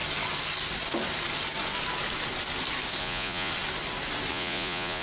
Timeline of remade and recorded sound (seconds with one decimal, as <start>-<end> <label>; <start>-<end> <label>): 0.0-3.0 recorded; 3.0-3.5 remade; 3.5-4.3 recorded; 4.3-5.0 remade